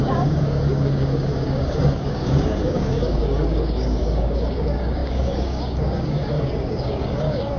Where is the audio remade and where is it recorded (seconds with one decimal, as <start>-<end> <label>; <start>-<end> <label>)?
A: 0.0-7.6 remade